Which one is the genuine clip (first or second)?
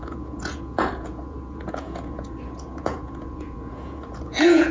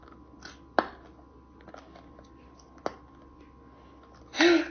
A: second